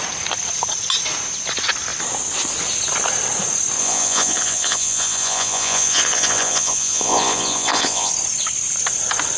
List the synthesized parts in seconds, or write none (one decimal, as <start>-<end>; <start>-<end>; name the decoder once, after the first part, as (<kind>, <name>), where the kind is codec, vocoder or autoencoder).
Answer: 3.8-8.1 (vocoder, Vocos)